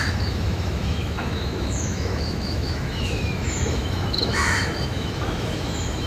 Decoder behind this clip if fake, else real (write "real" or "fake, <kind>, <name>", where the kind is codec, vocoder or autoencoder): fake, autoencoder, DAC-VAE